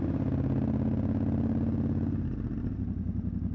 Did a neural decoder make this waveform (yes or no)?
no